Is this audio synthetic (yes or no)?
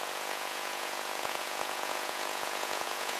yes